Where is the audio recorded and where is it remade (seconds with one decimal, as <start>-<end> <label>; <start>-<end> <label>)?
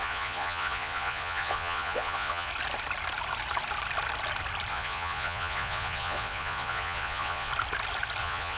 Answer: 0.0-2.5 remade; 2.5-4.7 recorded; 4.7-7.5 remade; 7.5-8.2 recorded; 8.2-8.6 remade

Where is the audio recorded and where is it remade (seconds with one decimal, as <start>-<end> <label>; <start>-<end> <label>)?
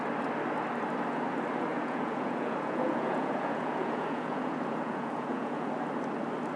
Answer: 0.0-1.7 recorded; 1.7-5.7 remade; 5.7-6.6 recorded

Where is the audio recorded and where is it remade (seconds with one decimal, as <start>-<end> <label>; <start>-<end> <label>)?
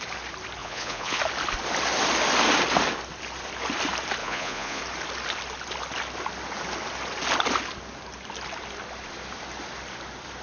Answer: 0.0-0.6 recorded; 0.6-1.2 remade; 1.2-4.2 recorded; 4.2-4.8 remade; 4.8-10.4 recorded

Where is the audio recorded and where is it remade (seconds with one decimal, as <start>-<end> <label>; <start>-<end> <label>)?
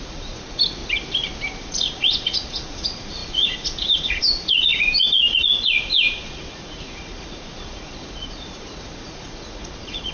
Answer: 0.0-0.8 remade; 0.8-1.6 recorded; 1.6-10.1 remade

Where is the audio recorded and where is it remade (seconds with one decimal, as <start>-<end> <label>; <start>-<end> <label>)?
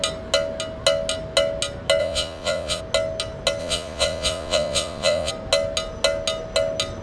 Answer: 0.0-2.0 recorded; 2.0-2.8 remade; 2.8-3.6 recorded; 3.6-5.3 remade; 5.3-7.0 recorded